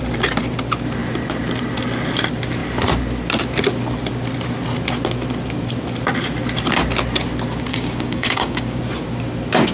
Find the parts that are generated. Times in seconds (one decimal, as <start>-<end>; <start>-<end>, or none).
7.7-8.8

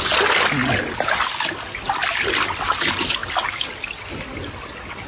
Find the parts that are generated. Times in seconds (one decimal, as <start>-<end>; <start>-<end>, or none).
none